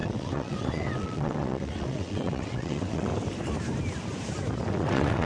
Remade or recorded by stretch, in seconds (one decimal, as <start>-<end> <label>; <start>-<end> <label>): 0.0-3.1 remade; 3.1-4.7 recorded; 4.7-5.3 remade